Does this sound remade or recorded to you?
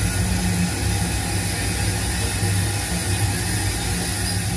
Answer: recorded